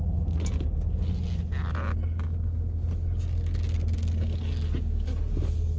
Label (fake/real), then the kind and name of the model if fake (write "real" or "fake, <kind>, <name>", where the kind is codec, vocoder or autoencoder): real